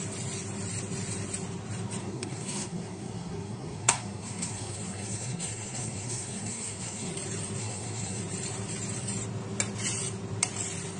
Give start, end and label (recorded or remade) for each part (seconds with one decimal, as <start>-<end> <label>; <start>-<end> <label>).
0.0-2.0 recorded; 2.0-7.1 remade; 7.1-7.6 recorded; 7.6-8.2 remade; 8.2-11.0 recorded